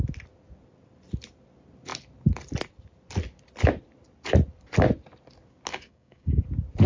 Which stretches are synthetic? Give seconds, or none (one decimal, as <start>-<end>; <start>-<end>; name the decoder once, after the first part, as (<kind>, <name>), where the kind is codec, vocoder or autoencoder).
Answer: 5.7-6.4 (codec, DAC)

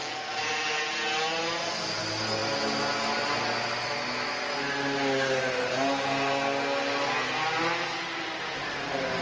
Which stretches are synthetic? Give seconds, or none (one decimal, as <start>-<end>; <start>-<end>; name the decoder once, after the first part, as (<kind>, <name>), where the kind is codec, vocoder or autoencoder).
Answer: none

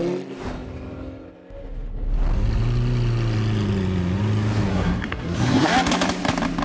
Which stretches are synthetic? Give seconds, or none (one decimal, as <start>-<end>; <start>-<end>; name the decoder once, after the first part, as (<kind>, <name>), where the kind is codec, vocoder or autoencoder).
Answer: 4.7-5.7 (codec, SNAC)

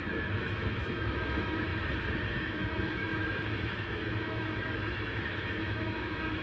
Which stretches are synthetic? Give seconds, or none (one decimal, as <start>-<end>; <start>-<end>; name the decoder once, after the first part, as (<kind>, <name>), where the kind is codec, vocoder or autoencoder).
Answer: 0.0-1.7 (autoencoder, DAC-VAE); 2.3-6.4

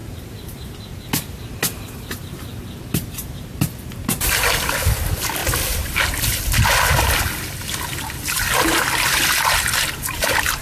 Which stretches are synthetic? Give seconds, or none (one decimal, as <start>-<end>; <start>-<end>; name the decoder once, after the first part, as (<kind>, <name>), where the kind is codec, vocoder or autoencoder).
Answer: 0.0-1.1 (vocoder, BigVGAN v2); 5.4-6.0